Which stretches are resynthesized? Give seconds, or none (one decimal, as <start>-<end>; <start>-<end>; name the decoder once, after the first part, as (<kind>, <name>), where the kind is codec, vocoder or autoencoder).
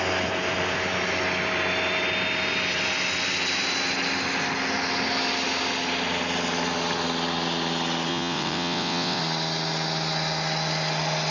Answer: 8.1-9.2 (vocoder, WaveNeXt)